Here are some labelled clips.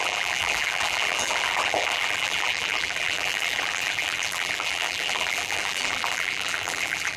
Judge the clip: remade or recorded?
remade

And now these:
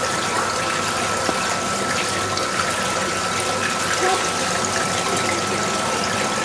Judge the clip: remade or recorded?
recorded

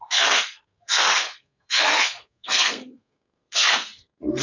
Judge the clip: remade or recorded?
remade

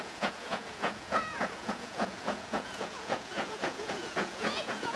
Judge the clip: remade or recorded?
remade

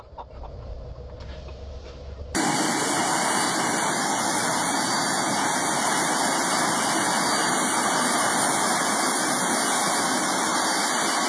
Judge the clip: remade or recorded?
recorded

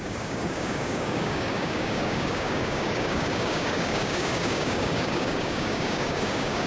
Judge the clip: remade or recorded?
remade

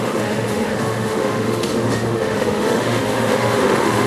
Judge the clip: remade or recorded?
remade